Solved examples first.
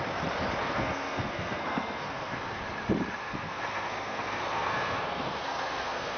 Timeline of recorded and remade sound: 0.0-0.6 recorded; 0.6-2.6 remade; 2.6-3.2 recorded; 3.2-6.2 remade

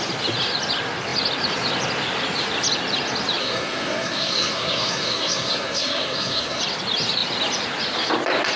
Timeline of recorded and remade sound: 0.0-3.4 recorded; 3.4-6.6 remade; 6.6-8.6 recorded

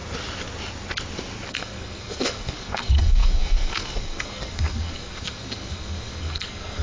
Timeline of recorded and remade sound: 0.0-1.5 recorded; 1.5-6.8 remade

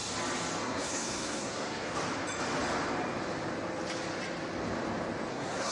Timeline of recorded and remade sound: 0.0-0.6 recorded; 0.6-1.9 remade; 1.9-5.3 recorded; 5.3-5.7 remade

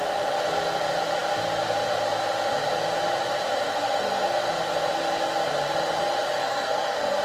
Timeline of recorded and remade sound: 0.0-6.4 recorded; 6.4-7.2 remade

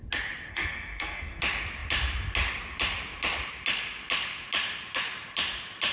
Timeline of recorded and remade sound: 0.0-0.5 recorded; 0.5-1.4 remade; 1.4-5.9 recorded